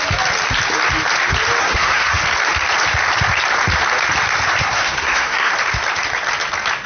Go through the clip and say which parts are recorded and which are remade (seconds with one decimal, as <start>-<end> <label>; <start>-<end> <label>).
0.0-1.6 recorded; 1.6-2.2 remade; 2.2-4.6 recorded; 4.6-5.5 remade; 5.5-6.9 recorded